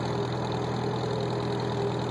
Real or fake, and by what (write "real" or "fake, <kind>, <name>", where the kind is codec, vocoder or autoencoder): real